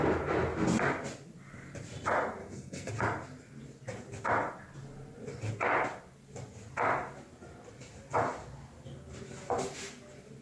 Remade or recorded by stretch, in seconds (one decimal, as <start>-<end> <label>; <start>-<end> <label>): 0.0-2.4 recorded; 2.4-2.9 remade; 2.9-10.4 recorded